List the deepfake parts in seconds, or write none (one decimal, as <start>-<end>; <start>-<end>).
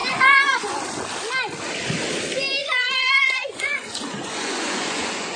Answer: 0.0-0.8; 2.6-5.4